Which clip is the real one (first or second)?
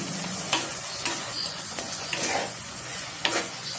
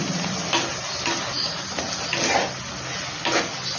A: second